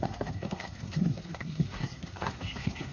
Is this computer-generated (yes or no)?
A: yes